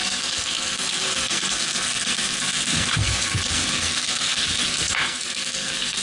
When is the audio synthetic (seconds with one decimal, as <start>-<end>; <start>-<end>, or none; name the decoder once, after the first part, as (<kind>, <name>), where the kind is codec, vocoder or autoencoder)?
0.0-6.0 (codec, SNAC)